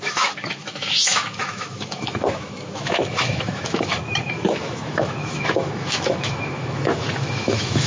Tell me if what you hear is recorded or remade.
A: remade